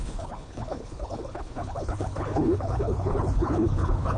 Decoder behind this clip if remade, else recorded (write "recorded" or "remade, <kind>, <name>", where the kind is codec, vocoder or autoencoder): remade, codec, HILCodec